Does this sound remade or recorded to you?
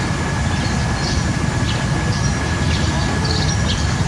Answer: recorded